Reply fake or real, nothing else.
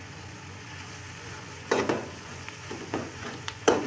fake